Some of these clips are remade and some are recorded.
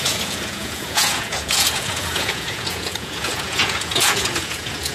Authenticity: remade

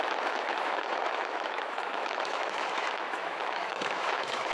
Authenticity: remade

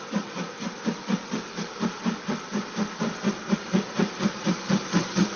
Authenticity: recorded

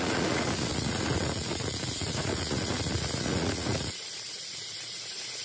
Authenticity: remade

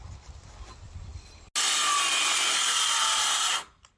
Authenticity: recorded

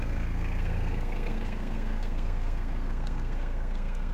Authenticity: remade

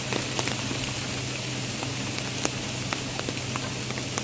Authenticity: recorded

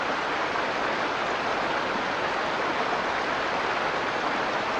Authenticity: recorded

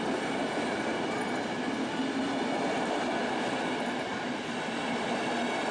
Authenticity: recorded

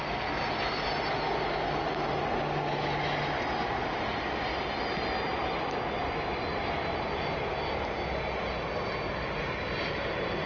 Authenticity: recorded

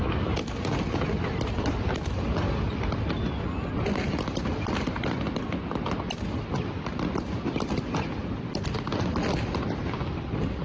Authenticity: recorded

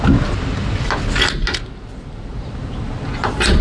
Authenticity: recorded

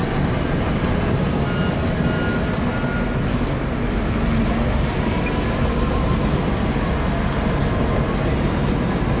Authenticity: recorded